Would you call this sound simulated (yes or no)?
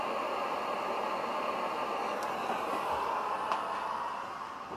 no